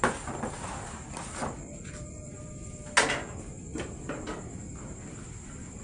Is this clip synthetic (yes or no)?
no